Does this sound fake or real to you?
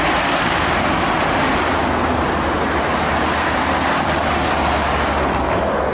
real